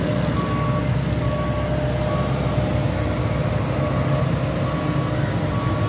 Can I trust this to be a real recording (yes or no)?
yes